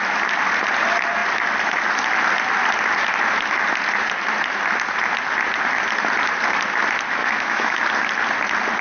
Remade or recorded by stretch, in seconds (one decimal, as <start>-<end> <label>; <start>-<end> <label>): 0.0-7.2 recorded; 7.2-7.8 remade; 7.8-8.8 recorded